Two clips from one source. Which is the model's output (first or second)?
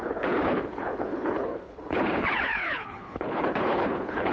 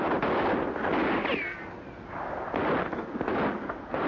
first